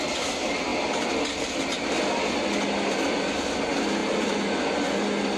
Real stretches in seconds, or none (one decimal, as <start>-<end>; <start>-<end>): 0.0-4.0; 4.9-5.4